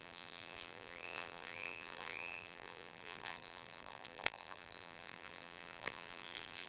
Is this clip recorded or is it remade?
remade